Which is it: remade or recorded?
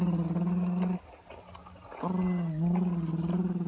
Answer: recorded